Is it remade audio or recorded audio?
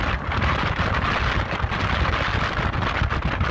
recorded